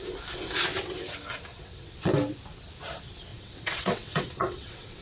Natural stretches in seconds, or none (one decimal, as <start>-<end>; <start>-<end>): 0.0-1.5; 2.1-3.3